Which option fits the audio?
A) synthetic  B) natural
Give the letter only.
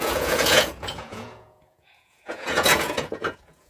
A